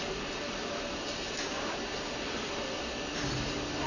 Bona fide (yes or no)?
yes